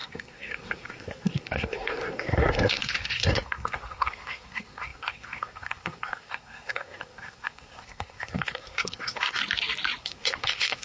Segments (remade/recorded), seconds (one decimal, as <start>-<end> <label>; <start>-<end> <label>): 0.0-9.4 remade; 9.4-10.0 recorded; 10.0-10.8 remade